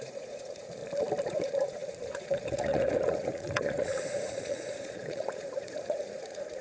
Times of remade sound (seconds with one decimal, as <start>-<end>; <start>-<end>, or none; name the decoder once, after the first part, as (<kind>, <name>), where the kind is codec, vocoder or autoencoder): 0.0-0.8 (vocoder, Vocos); 1.3-6.6